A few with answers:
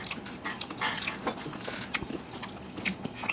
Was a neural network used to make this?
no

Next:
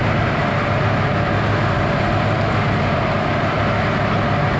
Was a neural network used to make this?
no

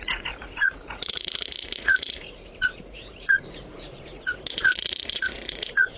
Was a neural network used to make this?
yes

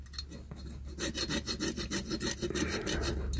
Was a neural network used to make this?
no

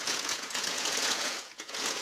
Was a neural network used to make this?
yes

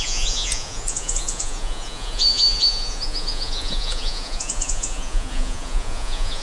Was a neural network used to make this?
yes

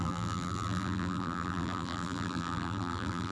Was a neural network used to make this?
yes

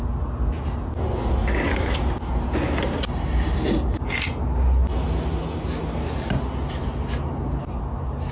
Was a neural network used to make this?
no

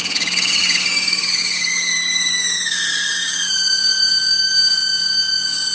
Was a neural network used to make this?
yes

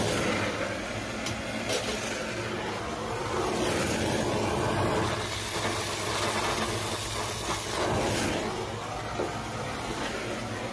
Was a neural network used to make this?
no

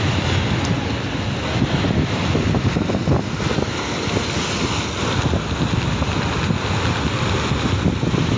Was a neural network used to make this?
no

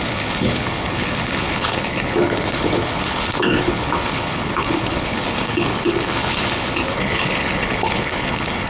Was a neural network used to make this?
yes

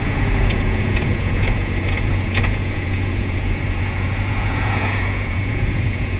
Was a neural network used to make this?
yes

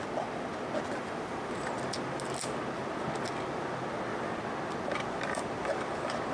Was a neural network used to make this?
no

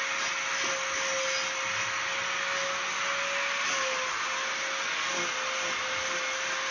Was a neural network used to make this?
no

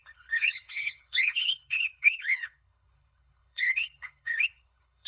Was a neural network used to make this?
yes